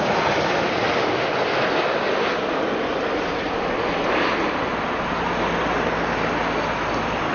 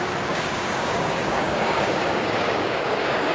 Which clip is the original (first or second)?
first